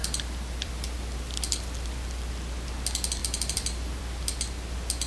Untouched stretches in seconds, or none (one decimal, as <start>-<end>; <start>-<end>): 2.3-3.2; 4.0-5.1